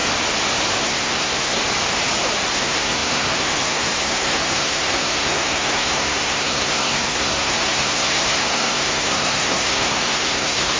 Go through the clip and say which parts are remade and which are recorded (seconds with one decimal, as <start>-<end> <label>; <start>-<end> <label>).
0.0-0.8 recorded; 0.8-1.6 remade; 1.6-2.5 recorded; 2.5-10.8 remade